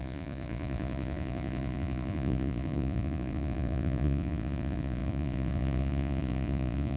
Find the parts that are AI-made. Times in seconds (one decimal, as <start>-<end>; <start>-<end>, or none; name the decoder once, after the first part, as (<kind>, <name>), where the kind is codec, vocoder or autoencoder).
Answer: 0.0-7.0 (vocoder, Vocos)

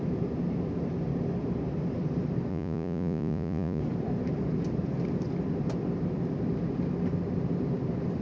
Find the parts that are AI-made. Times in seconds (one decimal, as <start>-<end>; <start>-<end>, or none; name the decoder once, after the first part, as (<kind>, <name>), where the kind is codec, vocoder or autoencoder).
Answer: 2.5-3.8 (vocoder, Vocos)

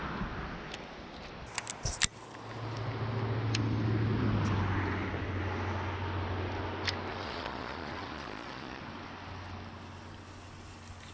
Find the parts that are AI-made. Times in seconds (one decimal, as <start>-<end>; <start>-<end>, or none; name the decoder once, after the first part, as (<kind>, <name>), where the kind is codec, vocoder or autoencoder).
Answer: 7.1-8.8 (vocoder, Vocos)

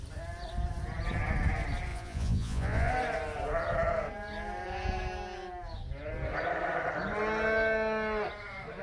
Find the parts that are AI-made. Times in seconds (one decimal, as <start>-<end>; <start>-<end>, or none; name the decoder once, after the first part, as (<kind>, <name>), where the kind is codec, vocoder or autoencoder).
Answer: 1.9-2.9 (vocoder, Vocos)

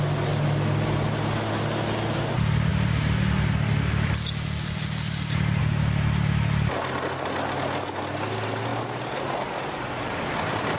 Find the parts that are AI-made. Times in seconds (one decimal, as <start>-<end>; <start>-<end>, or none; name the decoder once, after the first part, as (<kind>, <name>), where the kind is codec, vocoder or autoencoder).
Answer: none

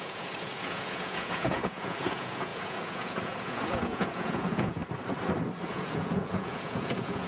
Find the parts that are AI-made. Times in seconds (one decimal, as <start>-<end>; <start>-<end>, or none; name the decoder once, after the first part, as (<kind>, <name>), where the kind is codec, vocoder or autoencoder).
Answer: 0.0-4.8 (vocoder, Vocos); 5.7-7.3

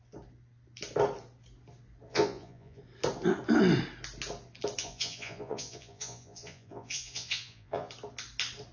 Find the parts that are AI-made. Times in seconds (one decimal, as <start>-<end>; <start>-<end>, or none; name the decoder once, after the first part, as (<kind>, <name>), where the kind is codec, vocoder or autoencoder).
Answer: 2.1-2.8 (vocoder, Vocos); 4.8-7.9